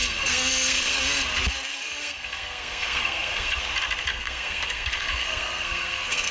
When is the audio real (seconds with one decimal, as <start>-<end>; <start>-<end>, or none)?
1.0-1.7; 3.6-4.1